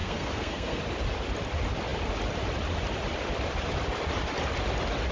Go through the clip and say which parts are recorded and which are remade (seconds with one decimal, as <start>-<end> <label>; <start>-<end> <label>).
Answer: 0.0-0.8 remade; 0.8-5.1 recorded